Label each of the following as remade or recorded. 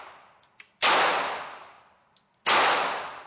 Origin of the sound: recorded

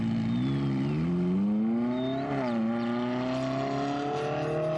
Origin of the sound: recorded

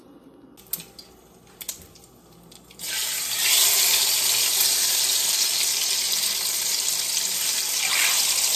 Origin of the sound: recorded